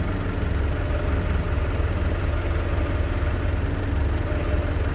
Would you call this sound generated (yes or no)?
no